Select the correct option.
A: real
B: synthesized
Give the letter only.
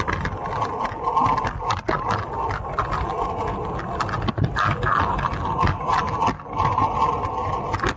A